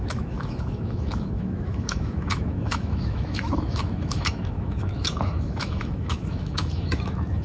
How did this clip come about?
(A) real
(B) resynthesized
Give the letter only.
B